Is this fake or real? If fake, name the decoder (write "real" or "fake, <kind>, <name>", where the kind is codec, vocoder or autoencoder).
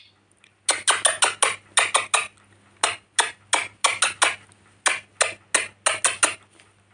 real